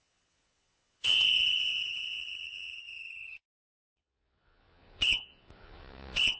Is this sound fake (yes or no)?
yes